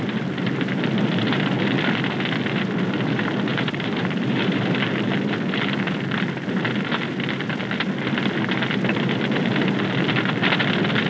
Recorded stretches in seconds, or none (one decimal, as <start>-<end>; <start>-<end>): 0.0-3.5; 4.6-11.1